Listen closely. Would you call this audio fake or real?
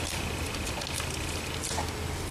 real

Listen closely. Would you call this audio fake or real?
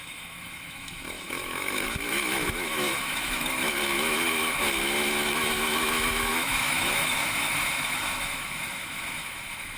fake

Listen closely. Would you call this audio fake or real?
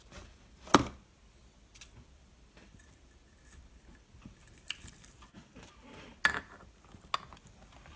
real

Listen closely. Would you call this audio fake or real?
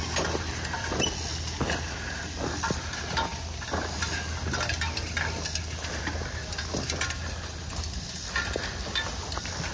real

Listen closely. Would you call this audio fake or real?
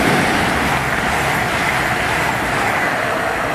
real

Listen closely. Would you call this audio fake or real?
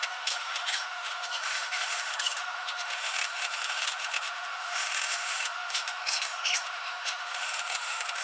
fake